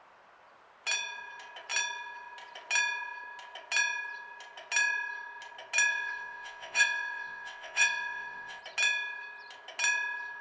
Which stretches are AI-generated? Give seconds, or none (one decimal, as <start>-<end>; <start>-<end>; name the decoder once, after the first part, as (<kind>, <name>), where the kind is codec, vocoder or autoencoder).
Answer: 5.9-8.6 (vocoder, WaveNeXt)